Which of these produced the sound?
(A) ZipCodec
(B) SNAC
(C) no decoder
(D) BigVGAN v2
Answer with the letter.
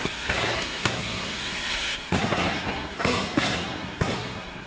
B